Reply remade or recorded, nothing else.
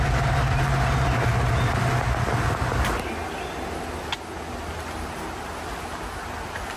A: recorded